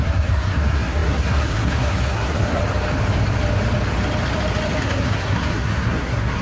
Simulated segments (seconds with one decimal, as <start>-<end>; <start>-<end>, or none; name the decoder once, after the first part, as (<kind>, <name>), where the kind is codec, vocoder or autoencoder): 0.0-2.6 (codec, SNAC); 4.8-6.4